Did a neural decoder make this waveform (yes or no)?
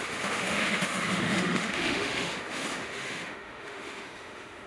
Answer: yes